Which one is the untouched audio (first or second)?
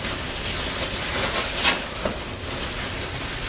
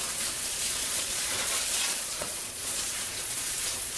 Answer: first